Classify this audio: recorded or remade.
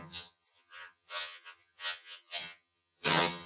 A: remade